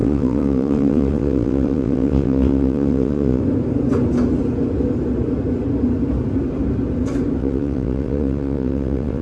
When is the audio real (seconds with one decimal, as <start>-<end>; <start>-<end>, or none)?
3.4-7.4